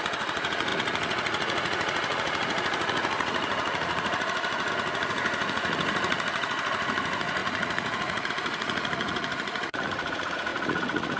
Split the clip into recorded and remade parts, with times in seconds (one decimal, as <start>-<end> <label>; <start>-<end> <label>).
0.0-11.2 remade